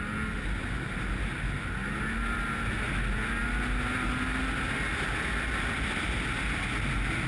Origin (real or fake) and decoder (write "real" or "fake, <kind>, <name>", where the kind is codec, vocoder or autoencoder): real